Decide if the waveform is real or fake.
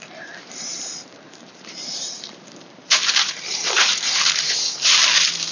fake